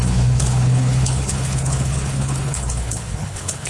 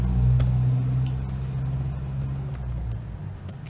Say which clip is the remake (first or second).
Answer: first